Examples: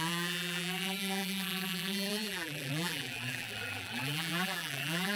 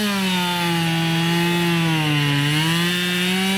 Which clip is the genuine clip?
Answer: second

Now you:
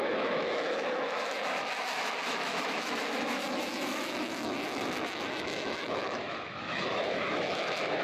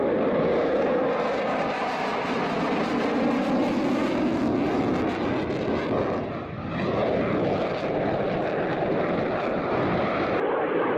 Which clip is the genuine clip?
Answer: second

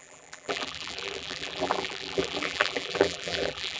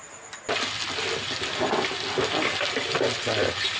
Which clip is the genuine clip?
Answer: second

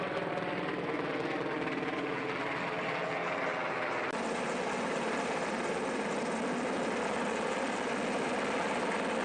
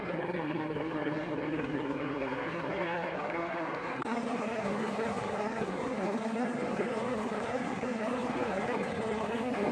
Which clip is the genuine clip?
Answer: first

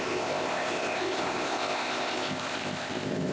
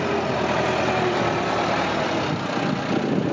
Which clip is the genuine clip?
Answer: second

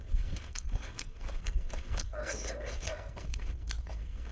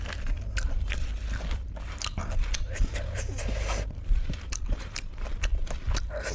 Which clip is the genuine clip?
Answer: second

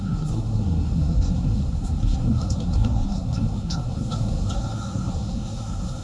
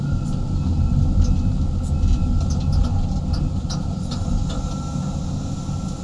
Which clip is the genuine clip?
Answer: second